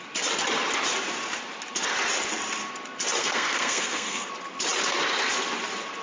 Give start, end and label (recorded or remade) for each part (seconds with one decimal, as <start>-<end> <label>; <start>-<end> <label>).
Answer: 0.0-3.2 recorded; 3.2-4.3 remade; 4.3-6.0 recorded